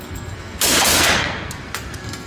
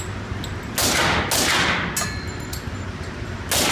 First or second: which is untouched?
second